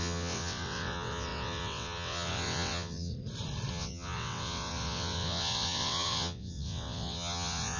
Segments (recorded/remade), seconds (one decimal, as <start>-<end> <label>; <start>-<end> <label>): 0.0-3.1 remade; 3.1-3.7 recorded; 3.7-7.8 remade